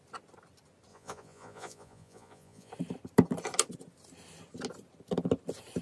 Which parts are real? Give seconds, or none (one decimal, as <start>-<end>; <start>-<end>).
0.0-0.9; 2.7-5.8